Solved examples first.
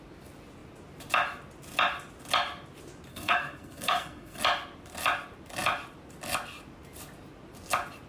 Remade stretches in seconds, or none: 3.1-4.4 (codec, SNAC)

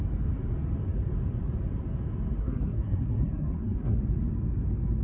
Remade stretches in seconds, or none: 2.4-4.0 (codec, SNAC)

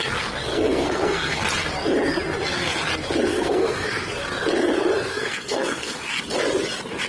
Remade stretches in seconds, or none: 0.5-1.4 (codec, SNAC); 3.3-4.1; 5.1-6.2

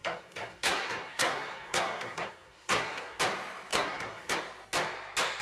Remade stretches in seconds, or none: 0.0-3.2 (codec, SNAC); 3.7-4.4

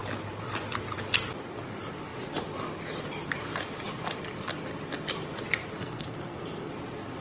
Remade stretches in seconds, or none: 5.8-6.7 (codec, SNAC)

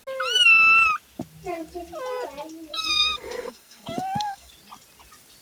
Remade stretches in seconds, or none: 2.7-4.5 (codec, SNAC)

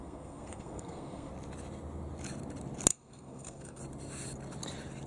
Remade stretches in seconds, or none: 0.0-1.3 (codec, SNAC); 2.9-3.8

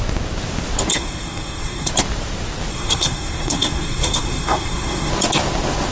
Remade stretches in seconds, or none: 0.9-1.9 (codec, SNAC); 2.7-5.1